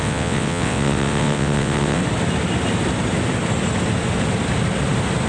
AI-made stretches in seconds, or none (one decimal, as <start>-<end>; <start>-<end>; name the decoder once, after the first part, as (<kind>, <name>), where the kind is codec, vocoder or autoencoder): 0.0-2.0 (vocoder, WaveNeXt)